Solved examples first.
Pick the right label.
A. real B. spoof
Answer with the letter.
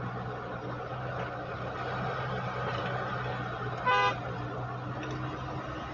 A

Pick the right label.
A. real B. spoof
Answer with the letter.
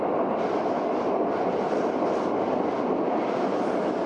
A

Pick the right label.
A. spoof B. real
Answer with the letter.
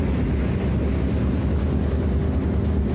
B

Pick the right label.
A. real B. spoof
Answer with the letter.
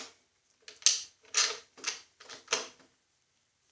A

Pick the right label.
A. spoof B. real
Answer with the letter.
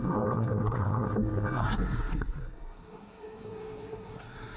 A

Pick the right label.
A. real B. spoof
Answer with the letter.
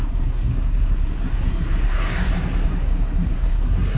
B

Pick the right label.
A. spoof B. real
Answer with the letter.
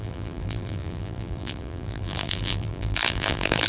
A